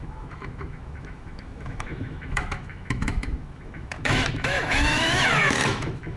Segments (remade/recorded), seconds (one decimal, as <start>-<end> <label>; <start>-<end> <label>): 0.0-6.2 remade